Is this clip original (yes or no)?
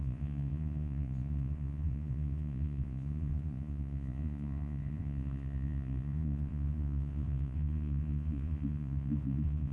no